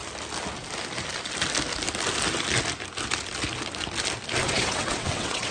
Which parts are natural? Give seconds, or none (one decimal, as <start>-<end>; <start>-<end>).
0.0-4.4